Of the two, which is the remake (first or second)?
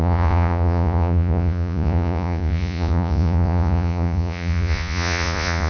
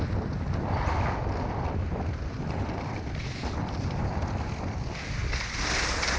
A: first